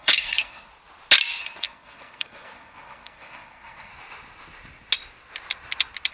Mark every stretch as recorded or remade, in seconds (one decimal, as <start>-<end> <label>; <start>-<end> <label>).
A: 0.0-0.7 remade; 0.7-1.4 recorded; 1.4-3.9 remade; 3.9-6.1 recorded